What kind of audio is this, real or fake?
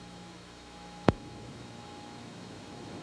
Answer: fake